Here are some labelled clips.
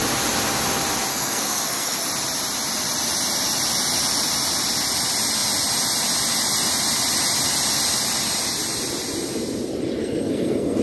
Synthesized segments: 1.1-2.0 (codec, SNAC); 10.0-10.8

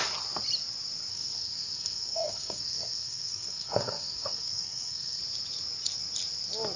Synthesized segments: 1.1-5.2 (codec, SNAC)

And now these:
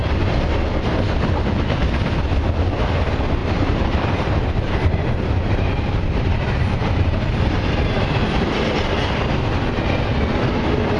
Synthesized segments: 3.4-8.0 (vocoder, BigVGAN v2)

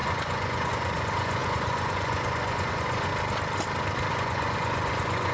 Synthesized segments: 0.0-3.1 (vocoder, Vocos); 4.1-5.3